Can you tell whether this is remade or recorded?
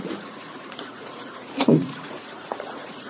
remade